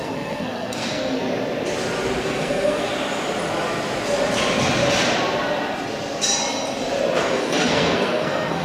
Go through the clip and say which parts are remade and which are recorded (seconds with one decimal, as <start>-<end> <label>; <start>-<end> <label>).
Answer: 0.0-1.2 remade; 1.2-2.2 recorded; 2.2-2.9 remade; 2.9-7.2 recorded; 7.2-8.6 remade

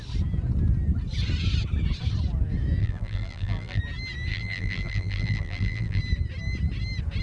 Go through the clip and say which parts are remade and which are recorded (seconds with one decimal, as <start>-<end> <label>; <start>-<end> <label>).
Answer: 0.0-2.8 recorded; 2.8-3.8 remade; 3.8-4.3 recorded; 4.3-6.0 remade; 6.0-7.2 recorded

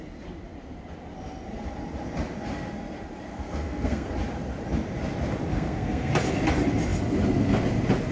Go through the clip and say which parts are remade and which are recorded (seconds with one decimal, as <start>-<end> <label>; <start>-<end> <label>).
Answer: 0.0-3.3 recorded; 3.3-4.1 remade; 4.1-5.5 recorded; 5.5-6.1 remade; 6.1-8.1 recorded